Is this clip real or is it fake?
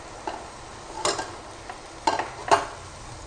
real